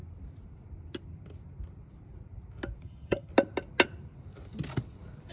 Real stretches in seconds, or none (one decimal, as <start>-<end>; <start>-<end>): 0.0-2.8; 3.3-5.3